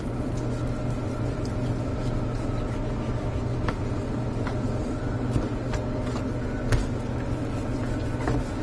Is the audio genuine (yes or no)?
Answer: yes